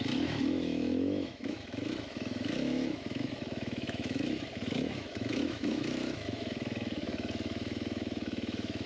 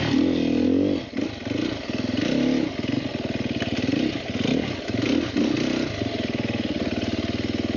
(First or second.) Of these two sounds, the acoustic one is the second